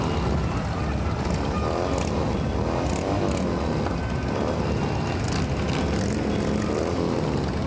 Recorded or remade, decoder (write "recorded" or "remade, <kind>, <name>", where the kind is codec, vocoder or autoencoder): recorded